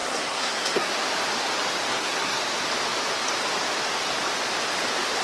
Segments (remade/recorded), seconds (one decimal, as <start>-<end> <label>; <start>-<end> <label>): 0.0-0.9 remade; 0.9-1.9 recorded; 1.9-2.4 remade; 2.4-5.2 recorded